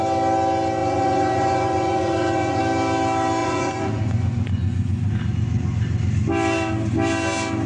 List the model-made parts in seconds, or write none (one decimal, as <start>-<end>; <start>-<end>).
0.8-2.6; 3.4-5.1